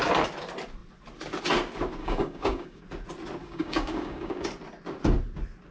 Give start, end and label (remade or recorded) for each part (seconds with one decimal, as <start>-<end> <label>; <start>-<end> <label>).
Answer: 0.0-2.0 recorded; 2.0-2.8 remade; 2.8-3.4 recorded; 3.4-4.5 remade; 4.5-5.7 recorded